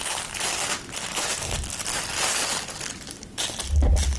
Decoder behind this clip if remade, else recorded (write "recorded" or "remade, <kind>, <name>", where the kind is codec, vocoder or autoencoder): recorded